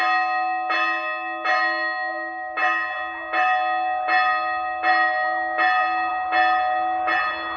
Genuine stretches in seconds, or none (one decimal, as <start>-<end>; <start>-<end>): 0.0-7.6